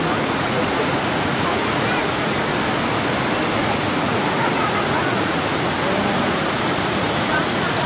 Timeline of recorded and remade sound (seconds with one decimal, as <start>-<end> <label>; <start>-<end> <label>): 0.0-2.5 remade; 2.5-3.5 recorded; 3.5-5.5 remade; 5.5-6.2 recorded; 6.2-7.9 remade